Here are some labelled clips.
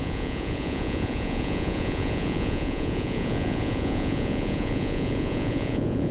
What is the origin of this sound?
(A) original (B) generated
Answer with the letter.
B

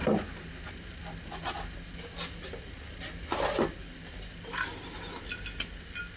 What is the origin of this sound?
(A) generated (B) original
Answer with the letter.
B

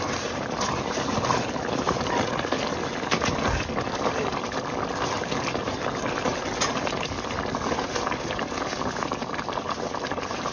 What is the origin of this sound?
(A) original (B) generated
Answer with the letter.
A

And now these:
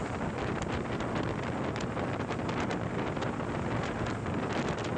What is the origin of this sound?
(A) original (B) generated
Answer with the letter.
B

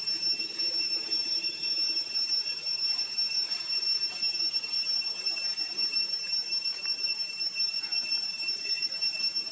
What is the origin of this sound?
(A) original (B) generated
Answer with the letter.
B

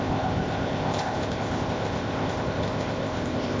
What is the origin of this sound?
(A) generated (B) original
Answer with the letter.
A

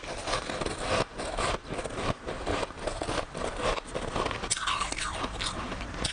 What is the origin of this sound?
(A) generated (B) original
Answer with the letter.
B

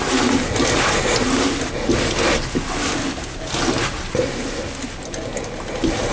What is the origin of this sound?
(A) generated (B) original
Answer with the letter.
B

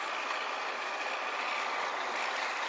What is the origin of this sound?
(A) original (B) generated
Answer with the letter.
A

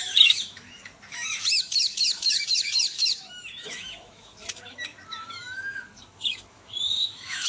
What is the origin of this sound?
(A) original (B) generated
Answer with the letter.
B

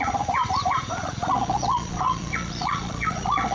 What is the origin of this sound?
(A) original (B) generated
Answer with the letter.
B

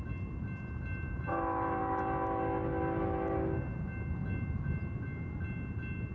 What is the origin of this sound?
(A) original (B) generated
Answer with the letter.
A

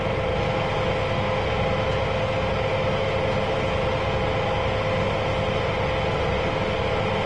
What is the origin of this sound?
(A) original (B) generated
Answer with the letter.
A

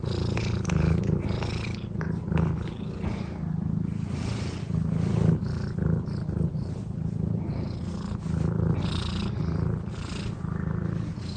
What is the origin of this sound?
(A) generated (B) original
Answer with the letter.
B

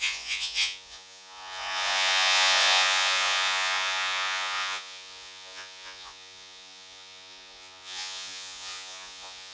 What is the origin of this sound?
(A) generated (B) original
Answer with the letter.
A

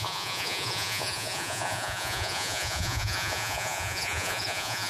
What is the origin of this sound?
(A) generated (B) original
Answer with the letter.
A